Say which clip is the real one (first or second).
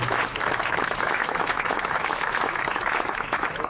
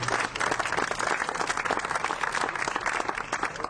second